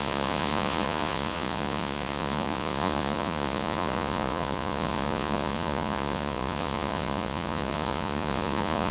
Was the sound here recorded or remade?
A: remade